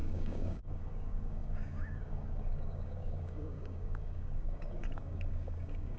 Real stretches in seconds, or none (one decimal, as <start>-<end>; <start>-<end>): none